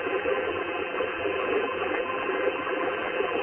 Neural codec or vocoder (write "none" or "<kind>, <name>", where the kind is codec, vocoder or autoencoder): vocoder, BigVGAN v2